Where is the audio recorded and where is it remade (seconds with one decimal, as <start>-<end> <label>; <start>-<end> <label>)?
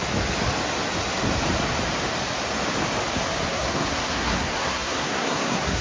0.0-3.5 recorded; 3.5-5.8 remade